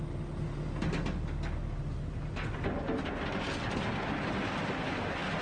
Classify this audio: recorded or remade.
recorded